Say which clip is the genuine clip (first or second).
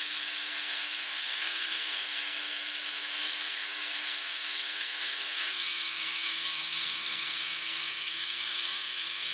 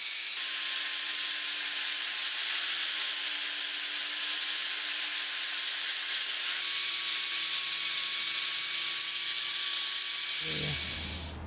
second